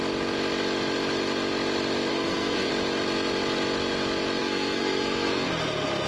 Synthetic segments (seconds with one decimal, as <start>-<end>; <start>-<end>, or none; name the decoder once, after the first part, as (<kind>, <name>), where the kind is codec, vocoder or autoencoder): 2.1-2.7 (codec, SNAC); 4.4-5.5

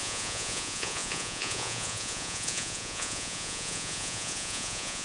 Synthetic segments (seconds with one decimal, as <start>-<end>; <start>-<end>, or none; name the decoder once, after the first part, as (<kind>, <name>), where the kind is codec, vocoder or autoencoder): 0.0-5.0 (vocoder, Vocos)

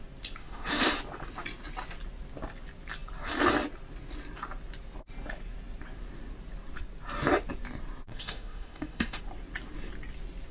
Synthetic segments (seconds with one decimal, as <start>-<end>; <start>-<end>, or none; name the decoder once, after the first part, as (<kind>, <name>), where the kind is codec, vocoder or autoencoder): 0.4-0.9 (autoencoder, DAC-VAE); 8.1-9.2

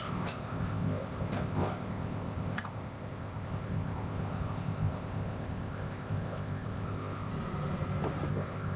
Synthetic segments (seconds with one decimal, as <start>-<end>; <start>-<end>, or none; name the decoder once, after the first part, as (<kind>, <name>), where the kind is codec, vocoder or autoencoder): 0.0-7.3 (codec, ZipCodec); 8.3-8.8

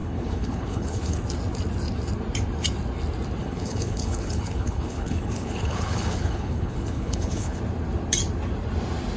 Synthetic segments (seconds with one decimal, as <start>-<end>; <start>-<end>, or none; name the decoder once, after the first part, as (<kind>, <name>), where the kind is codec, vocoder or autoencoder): 0.0-1.2 (codec, HILCodec); 3.4-7.6

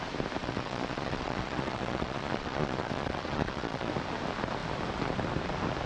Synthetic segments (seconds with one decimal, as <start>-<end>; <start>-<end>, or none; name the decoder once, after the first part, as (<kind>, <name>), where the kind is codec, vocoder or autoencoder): 0.4-3.9 (vocoder, Vocos)